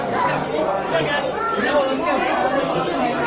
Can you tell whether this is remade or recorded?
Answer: recorded